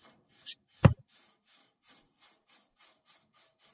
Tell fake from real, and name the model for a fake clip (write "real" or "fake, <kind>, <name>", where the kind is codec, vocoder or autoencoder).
fake, vocoder, BigVGAN v2